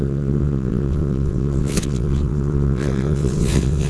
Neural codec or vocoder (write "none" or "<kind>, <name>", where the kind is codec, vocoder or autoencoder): vocoder, WaveNeXt